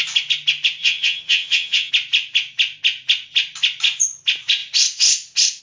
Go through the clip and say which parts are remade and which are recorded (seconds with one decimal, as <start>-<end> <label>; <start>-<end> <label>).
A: 0.0-0.8 recorded; 0.8-1.9 remade; 1.9-5.6 recorded